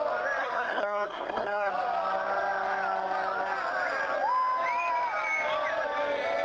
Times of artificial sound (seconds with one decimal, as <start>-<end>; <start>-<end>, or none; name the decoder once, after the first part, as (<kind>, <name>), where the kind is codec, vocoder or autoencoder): 0.4-1.7 (codec, SNAC)